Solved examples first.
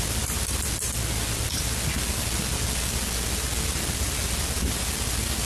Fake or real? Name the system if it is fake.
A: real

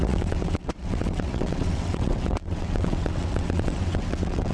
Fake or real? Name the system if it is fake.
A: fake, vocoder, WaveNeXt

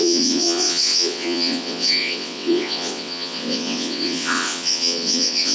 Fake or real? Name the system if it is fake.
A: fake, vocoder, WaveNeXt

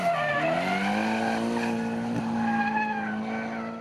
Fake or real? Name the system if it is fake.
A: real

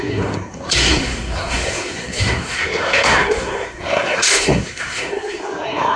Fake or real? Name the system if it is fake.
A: fake, codec, SNAC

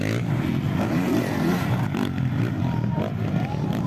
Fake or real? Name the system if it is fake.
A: real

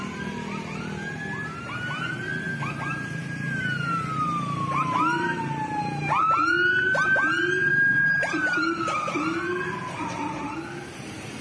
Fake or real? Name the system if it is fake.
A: real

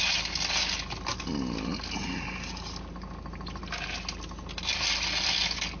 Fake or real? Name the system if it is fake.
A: real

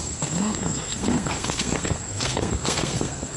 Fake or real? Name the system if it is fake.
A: fake, codec, SNAC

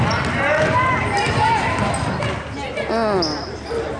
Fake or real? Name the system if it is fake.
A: real